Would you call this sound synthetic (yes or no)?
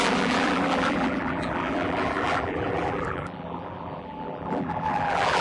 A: yes